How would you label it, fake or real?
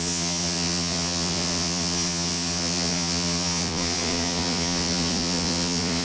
fake